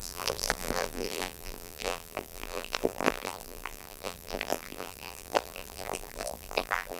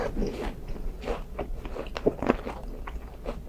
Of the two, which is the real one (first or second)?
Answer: second